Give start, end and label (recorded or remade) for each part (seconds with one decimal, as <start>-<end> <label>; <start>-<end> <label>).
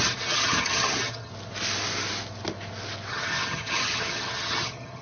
0.0-1.3 remade; 1.3-3.1 recorded; 3.1-5.0 remade